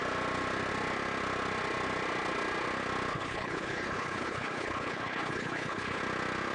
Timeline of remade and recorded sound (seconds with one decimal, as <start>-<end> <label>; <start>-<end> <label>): 0.0-3.1 recorded; 3.1-6.0 remade; 6.0-6.5 recorded